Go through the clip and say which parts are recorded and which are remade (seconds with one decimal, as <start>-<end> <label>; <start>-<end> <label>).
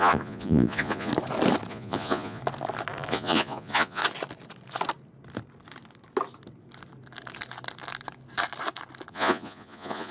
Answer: 0.0-1.1 remade; 1.1-1.7 recorded; 1.7-2.4 remade; 2.4-3.1 recorded; 3.1-4.0 remade; 4.0-9.1 recorded; 9.1-10.1 remade